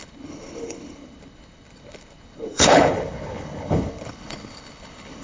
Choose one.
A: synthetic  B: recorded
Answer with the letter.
A